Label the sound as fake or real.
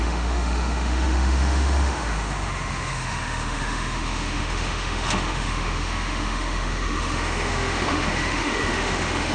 fake